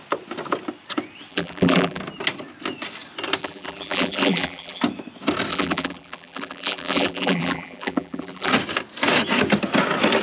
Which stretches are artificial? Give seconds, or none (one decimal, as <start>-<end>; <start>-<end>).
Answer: 1.3-2.0; 3.4-4.8; 5.5-8.5